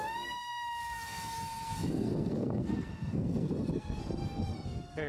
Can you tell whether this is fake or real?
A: fake